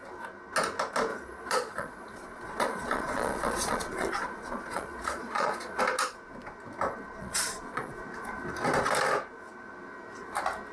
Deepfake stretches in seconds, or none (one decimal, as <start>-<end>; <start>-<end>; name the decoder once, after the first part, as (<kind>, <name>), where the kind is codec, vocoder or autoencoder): 1.1-5.8 (vocoder, Vocos); 7.2-7.9